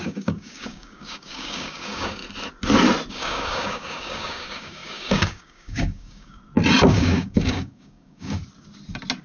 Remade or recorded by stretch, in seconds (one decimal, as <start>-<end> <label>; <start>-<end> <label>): 0.0-2.2 remade; 2.2-3.1 recorded; 3.1-6.4 remade; 6.4-6.9 recorded; 6.9-8.4 remade; 8.4-9.2 recorded